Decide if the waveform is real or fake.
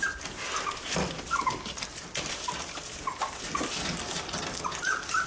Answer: real